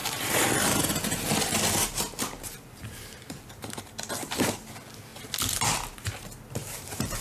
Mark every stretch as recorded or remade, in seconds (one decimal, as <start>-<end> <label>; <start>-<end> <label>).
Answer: 0.0-0.7 remade; 0.7-1.9 recorded; 1.9-4.6 remade; 4.6-6.6 recorded; 6.6-7.2 remade